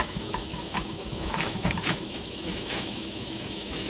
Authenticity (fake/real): fake